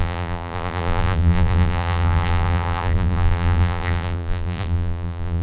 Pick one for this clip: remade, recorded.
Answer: remade